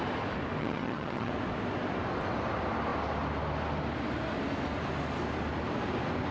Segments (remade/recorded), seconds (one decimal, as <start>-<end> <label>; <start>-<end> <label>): 0.0-0.6 recorded; 0.6-1.3 remade; 1.3-6.3 recorded